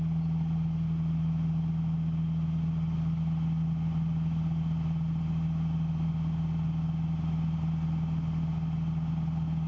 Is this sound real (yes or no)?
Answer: yes